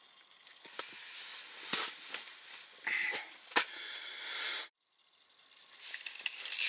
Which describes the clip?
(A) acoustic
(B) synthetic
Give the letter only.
A